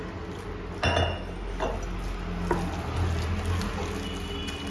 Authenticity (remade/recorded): recorded